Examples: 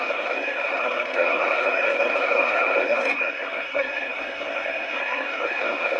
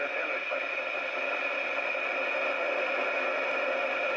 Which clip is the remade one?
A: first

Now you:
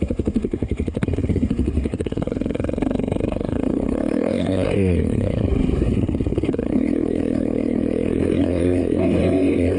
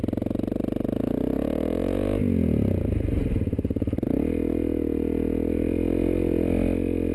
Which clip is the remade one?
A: first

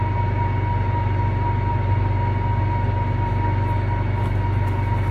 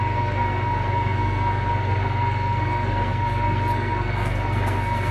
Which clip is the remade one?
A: second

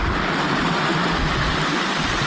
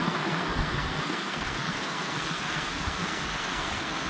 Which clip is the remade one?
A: second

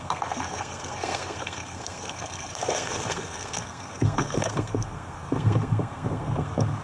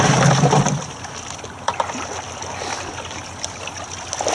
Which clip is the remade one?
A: first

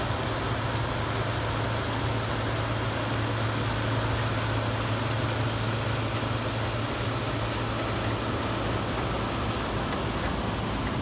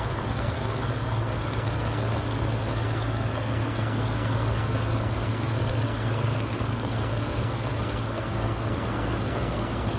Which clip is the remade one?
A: second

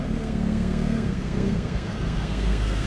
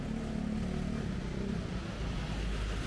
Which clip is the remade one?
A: first